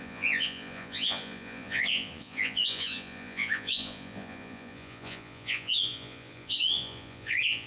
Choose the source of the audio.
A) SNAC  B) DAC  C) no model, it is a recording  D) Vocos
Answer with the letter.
D